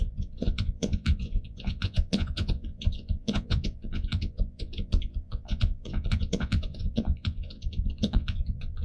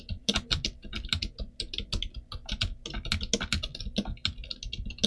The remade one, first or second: first